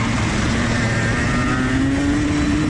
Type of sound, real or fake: real